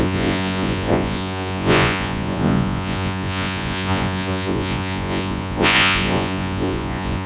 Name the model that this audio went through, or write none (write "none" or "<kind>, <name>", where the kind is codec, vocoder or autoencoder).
vocoder, Vocos